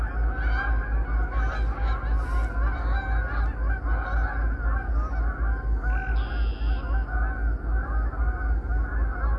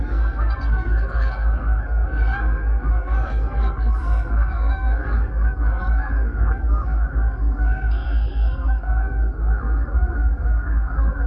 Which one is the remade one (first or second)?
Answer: second